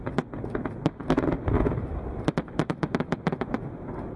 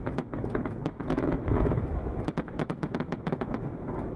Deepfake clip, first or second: second